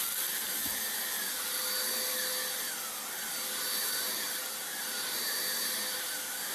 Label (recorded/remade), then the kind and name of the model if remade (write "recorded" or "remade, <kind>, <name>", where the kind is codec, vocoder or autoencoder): recorded